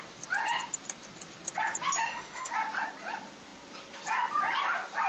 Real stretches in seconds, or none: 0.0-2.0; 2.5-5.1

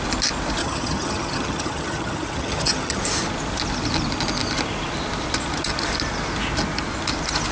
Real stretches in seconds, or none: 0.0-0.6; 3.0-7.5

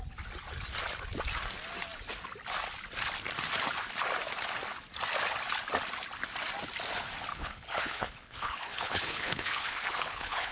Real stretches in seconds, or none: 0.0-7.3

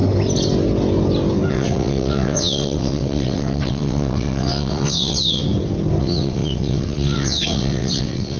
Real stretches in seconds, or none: 0.0-1.5; 5.4-6.0